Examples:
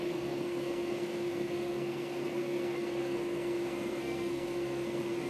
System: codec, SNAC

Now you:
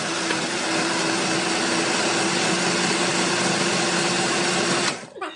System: none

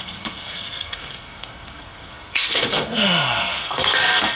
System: codec, SNAC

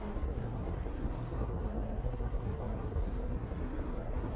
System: codec, SNAC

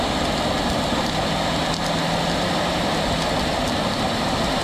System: none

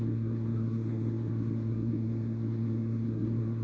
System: codec, SNAC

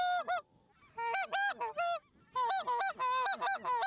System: none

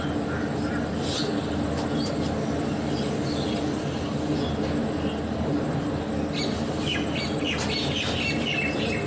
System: none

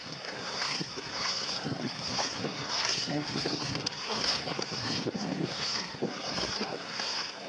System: codec, SNAC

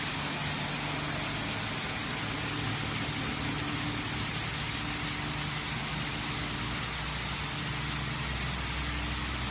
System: none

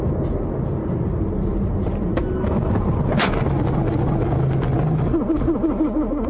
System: none